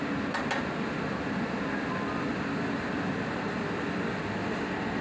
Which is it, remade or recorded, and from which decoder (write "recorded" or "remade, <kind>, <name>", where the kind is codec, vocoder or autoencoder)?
recorded